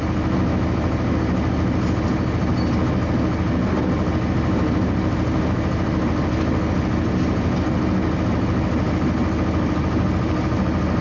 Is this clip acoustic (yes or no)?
yes